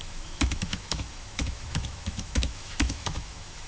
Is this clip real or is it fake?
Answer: fake